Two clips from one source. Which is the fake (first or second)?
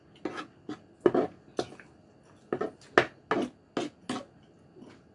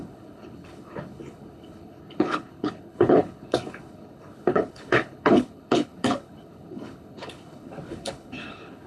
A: second